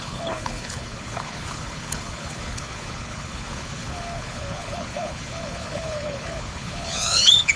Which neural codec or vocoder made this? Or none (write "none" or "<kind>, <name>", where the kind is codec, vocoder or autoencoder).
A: codec, HILCodec